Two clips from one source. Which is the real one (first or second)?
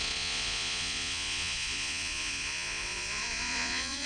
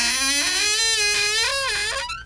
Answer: second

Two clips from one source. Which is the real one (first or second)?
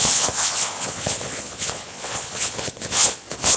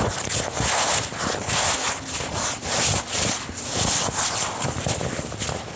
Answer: second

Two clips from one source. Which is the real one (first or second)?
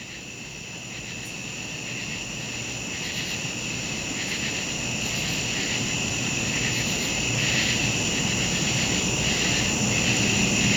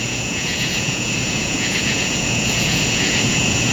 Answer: first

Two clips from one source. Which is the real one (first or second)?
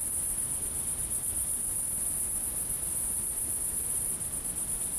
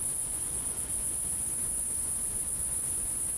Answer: first